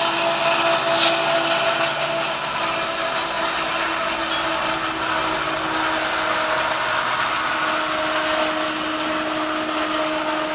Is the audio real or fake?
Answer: real